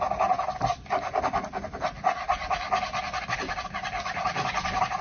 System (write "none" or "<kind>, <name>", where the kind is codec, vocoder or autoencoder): none